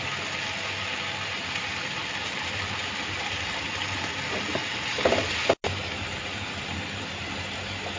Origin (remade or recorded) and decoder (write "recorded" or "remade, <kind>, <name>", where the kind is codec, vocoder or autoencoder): recorded